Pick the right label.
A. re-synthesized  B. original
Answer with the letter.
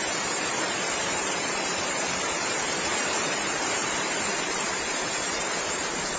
A